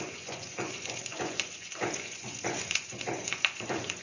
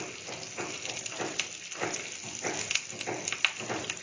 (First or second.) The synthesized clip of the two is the first